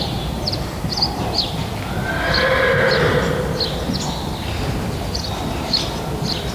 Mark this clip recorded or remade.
recorded